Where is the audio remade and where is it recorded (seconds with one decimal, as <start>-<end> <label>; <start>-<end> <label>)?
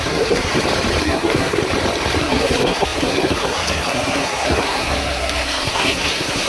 0.0-0.5 remade; 0.5-1.0 recorded; 1.0-1.6 remade; 1.6-2.2 recorded; 2.2-6.5 remade